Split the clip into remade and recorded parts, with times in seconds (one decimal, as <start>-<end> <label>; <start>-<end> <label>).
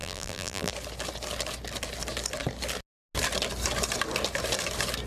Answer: 0.0-0.7 remade; 0.7-5.1 recorded